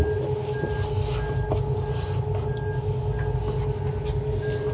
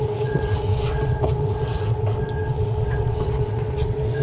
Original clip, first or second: first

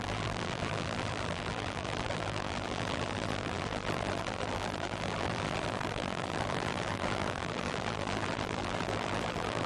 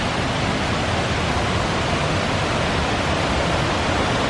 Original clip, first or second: second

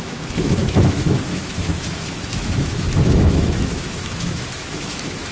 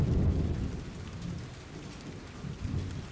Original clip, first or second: second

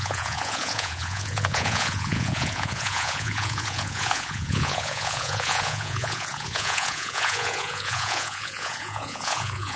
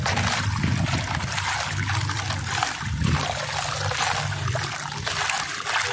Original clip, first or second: second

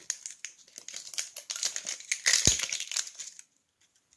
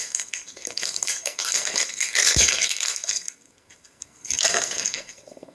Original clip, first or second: first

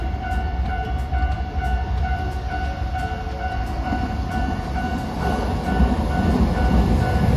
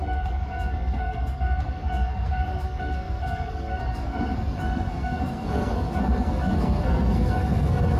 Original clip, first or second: first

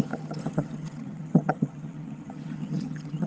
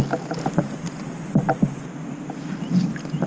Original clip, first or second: second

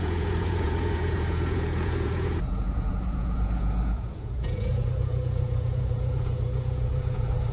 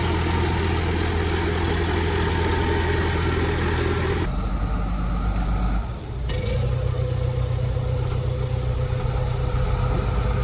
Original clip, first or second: second